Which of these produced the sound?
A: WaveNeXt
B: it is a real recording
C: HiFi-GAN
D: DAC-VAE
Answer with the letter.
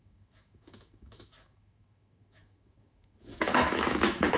D